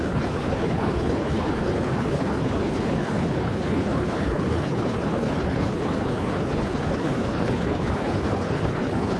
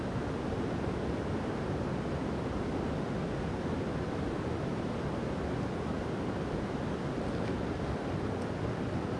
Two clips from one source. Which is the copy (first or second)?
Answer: first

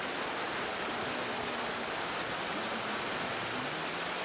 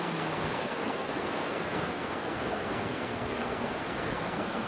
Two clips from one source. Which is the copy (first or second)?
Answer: second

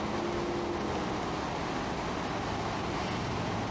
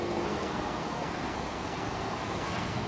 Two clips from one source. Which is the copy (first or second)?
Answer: second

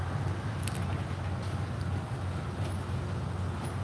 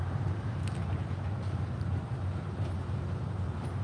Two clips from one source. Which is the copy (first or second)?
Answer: second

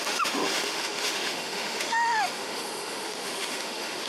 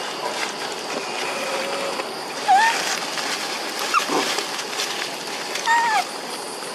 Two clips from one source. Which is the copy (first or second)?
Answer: first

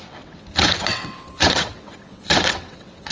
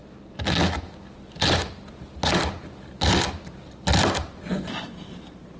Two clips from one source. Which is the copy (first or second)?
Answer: first